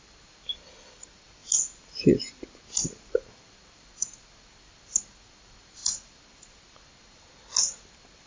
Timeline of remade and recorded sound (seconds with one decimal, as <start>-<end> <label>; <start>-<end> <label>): 0.0-8.3 recorded

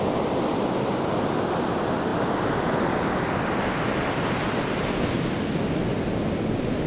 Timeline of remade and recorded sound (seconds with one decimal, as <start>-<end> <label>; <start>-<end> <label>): 0.0-6.9 recorded

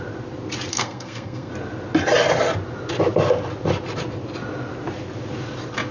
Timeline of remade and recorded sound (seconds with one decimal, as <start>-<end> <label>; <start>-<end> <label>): 0.0-0.7 recorded; 0.7-1.5 remade; 1.5-5.9 recorded

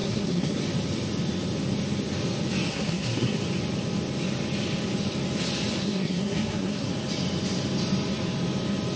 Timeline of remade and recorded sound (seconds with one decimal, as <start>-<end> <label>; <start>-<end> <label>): 0.0-0.6 remade; 0.6-2.7 recorded; 2.7-3.4 remade; 3.4-5.8 recorded; 5.8-6.9 remade; 6.9-9.0 recorded

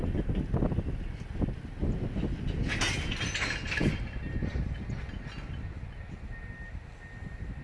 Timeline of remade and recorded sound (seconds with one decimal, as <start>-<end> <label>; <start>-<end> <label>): 0.0-7.6 recorded

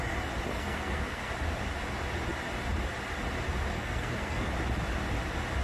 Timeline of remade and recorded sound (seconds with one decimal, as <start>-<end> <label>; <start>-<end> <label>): 0.0-0.5 recorded; 0.5-1.3 remade; 1.3-3.7 recorded; 3.7-4.5 remade; 4.5-5.6 recorded

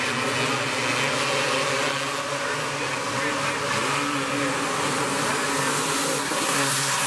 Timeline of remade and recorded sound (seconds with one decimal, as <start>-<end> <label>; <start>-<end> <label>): 0.0-6.2 recorded; 6.2-7.1 remade